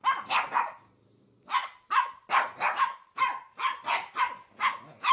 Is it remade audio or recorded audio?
recorded